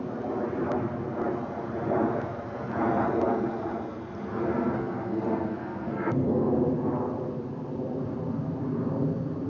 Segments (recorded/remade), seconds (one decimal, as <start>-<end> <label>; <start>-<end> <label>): 0.0-4.3 recorded; 4.3-6.5 remade; 6.5-9.5 recorded